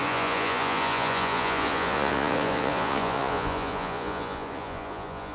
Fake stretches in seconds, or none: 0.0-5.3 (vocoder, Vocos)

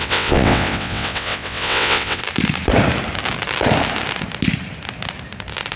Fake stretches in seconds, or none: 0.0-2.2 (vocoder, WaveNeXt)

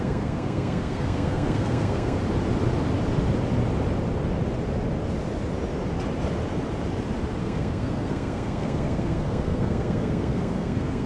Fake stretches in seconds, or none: 0.0-2.2 (codec, SNAC); 7.4-11.1

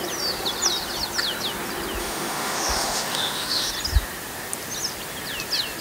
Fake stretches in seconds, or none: 2.0-3.7 (autoencoder, DAC-VAE)

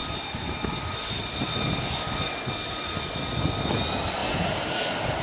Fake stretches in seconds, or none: none

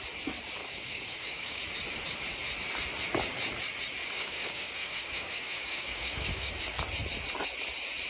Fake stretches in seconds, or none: 0.6-1.6 (codec, DAC); 4.0-6.8